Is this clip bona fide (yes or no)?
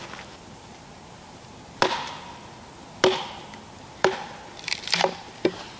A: yes